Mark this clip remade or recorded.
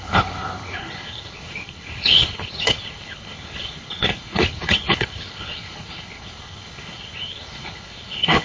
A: remade